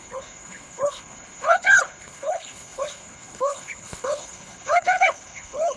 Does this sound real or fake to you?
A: fake